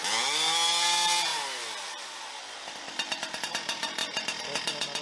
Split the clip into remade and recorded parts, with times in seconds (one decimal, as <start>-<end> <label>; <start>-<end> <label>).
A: 0.0-5.0 recorded